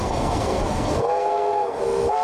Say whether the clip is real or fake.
fake